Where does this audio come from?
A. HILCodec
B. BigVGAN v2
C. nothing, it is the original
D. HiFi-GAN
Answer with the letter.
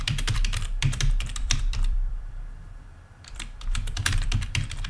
B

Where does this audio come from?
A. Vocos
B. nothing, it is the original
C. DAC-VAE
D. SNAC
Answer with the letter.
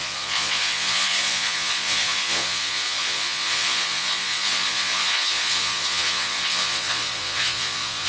A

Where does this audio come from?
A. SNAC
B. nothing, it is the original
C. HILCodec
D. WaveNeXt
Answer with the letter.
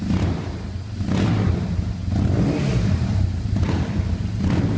B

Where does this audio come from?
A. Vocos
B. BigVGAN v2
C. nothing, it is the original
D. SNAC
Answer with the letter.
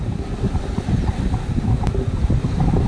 C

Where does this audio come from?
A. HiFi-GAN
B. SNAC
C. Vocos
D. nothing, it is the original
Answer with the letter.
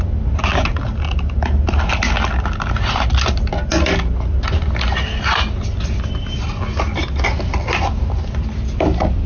D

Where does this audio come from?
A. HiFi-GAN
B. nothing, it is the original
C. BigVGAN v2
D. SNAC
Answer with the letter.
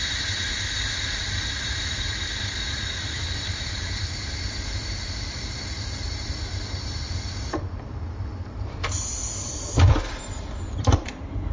C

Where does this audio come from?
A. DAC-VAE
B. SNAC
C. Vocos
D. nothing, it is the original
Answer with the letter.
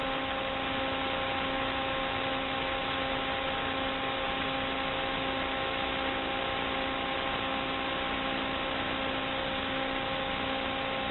D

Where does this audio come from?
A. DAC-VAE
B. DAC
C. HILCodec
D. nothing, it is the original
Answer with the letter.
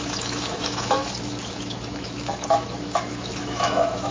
A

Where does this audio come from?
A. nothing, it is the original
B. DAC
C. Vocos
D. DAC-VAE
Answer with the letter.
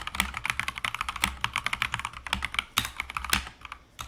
A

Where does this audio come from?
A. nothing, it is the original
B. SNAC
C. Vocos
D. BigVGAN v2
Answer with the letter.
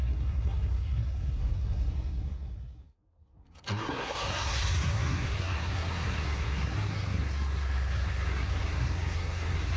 B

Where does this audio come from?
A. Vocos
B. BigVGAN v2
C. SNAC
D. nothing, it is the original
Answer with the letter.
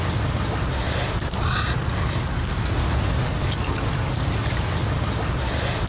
D